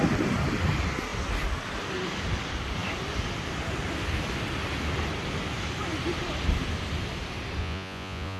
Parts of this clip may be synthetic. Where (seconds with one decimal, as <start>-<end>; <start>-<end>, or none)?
7.6-8.4